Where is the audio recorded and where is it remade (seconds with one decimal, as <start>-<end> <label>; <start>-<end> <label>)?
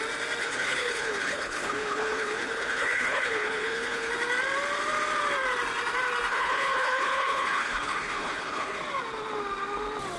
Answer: 0.0-0.4 recorded; 0.4-4.1 remade; 4.1-6.3 recorded; 6.3-8.8 remade; 8.8-10.2 recorded